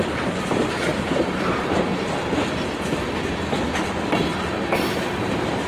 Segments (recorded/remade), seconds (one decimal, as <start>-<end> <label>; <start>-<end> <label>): 0.0-1.9 remade; 1.9-4.9 recorded; 4.9-5.7 remade